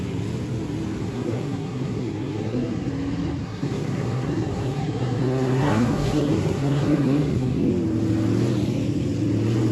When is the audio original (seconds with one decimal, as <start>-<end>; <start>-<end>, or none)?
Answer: 0.0-1.0; 2.9-3.4; 7.7-9.7